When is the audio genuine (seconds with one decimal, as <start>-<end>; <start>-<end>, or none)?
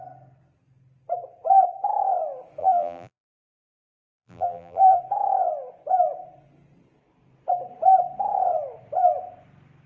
0.0-2.6; 5.0-9.9